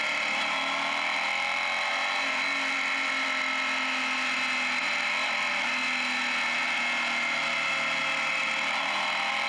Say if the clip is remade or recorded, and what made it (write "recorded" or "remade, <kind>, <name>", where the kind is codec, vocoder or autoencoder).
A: recorded